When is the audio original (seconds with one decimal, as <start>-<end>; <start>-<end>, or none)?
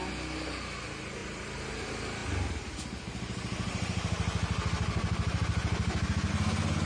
0.0-6.9